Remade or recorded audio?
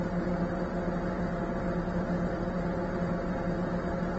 recorded